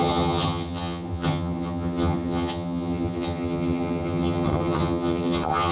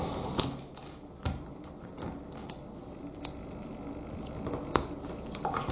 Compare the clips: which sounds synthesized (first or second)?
first